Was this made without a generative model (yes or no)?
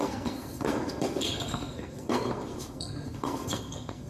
no